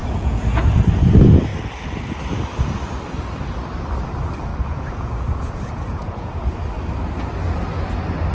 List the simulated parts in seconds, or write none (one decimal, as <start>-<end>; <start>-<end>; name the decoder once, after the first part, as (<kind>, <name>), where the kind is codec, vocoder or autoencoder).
0.0-0.8 (vocoder, Vocos); 4.5-6.5